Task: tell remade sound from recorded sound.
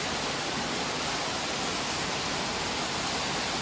recorded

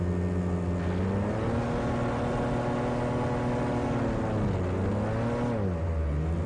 recorded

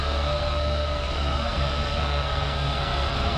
remade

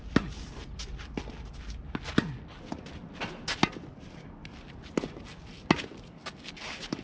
recorded